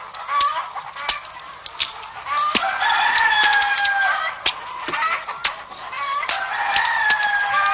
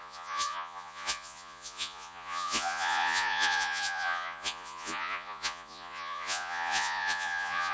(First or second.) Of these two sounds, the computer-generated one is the second